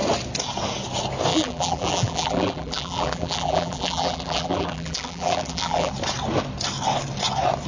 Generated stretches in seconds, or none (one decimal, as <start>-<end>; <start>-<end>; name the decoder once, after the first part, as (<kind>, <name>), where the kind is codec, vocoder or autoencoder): 1.3-5.9 (vocoder, BigVGAN v2)